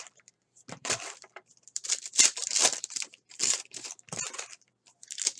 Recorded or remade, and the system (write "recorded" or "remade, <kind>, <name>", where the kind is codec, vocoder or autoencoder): remade, vocoder, BigVGAN v2